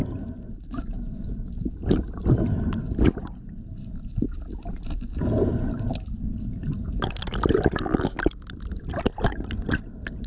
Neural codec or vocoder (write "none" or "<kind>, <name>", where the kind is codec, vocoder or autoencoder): none